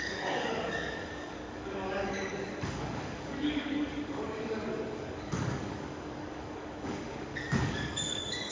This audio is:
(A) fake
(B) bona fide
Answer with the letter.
A